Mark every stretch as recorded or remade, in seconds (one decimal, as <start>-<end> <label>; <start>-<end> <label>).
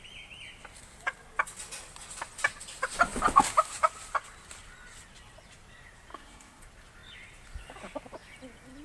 0.0-6.1 recorded; 6.1-6.6 remade; 6.6-8.8 recorded